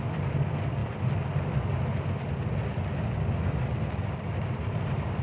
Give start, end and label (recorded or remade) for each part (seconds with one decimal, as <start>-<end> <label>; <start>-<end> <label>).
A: 0.0-5.2 recorded